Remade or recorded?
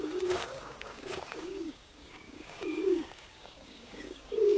remade